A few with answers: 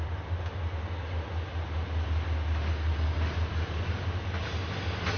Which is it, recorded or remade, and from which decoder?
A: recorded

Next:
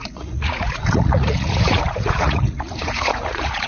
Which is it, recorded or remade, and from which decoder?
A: remade, vocoder, Vocos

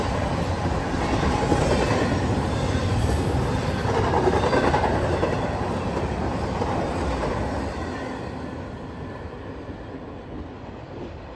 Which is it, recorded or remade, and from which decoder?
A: recorded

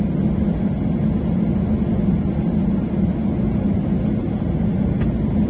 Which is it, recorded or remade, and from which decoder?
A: recorded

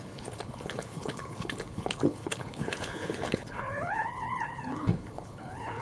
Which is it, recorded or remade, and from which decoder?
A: remade, codec, HILCodec